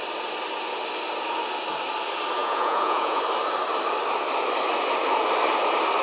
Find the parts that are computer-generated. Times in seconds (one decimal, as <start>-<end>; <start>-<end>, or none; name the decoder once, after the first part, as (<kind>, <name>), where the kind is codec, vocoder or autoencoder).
2.4-3.2 (vocoder, Vocos)